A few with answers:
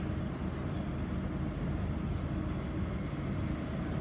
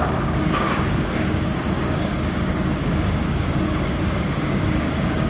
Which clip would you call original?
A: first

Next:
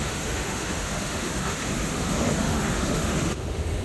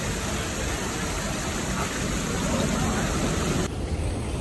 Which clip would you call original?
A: second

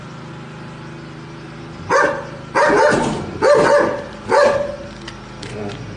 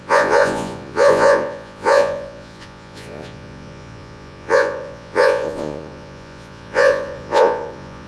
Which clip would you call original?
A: first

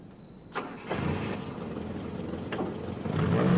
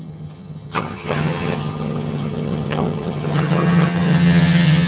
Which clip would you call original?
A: first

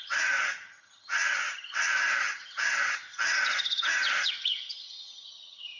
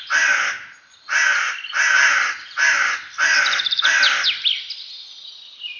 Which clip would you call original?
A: second